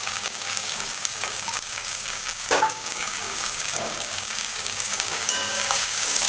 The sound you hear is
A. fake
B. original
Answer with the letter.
A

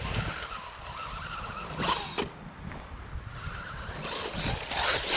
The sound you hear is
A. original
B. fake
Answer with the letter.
A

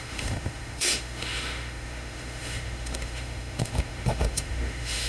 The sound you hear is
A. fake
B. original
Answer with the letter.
A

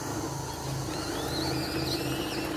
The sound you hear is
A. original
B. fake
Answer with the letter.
A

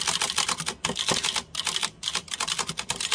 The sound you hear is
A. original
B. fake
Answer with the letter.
A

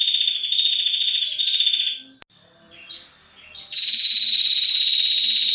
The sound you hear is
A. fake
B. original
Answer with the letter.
B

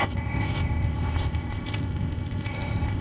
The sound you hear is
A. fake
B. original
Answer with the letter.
A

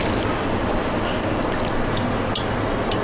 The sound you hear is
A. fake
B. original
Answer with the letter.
B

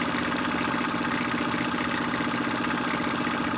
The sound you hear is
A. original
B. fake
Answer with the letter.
A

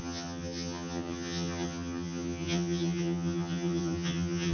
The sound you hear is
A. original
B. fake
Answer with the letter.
B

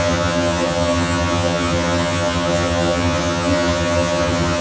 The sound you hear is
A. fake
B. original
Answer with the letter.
A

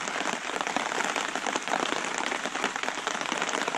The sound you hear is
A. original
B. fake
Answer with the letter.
B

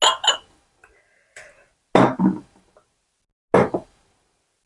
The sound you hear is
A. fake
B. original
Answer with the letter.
B